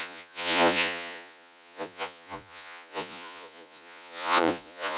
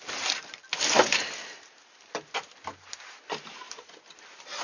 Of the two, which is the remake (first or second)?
first